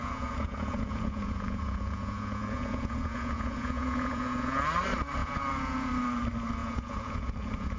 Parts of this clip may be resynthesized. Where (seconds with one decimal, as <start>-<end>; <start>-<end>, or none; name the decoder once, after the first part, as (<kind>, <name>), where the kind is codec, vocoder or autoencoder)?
0.0-4.6 (vocoder, Vocos); 5.2-5.9; 6.6-7.8